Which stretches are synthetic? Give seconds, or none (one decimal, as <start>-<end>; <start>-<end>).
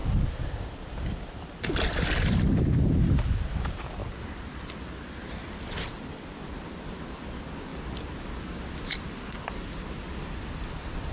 none